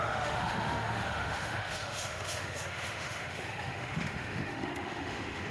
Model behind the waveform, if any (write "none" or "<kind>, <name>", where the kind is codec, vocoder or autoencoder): autoencoder, DAC-VAE